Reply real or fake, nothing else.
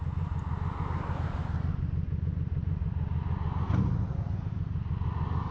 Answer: real